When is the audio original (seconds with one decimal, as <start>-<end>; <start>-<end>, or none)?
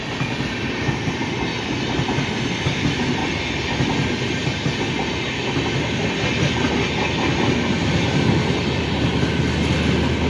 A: 0.0-10.3